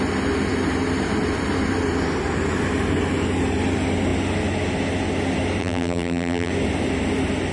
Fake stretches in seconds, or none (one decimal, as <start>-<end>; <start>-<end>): 5.6-6.5